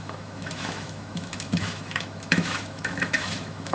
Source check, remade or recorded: remade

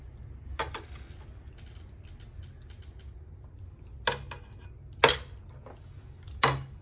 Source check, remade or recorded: recorded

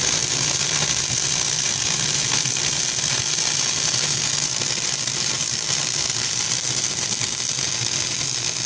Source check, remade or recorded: recorded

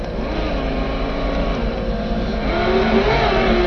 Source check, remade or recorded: recorded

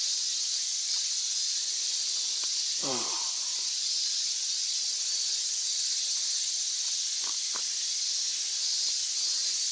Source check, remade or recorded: recorded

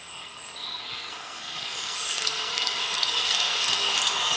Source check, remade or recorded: remade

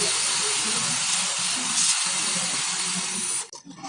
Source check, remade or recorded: recorded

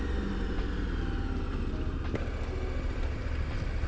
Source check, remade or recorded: recorded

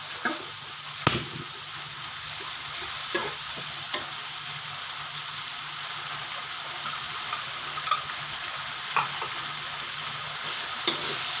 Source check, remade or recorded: recorded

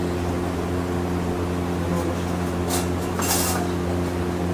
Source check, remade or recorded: recorded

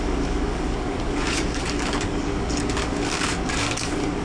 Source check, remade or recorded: remade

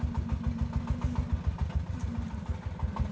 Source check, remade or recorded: recorded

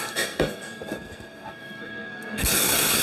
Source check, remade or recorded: remade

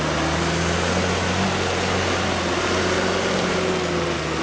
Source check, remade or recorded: recorded